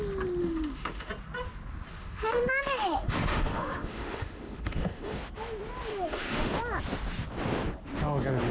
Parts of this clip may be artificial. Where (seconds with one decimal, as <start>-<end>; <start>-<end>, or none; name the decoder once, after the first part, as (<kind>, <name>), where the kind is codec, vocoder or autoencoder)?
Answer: 0.4-1.1 (autoencoder, DAC-VAE); 2.0-5.1; 5.9-6.5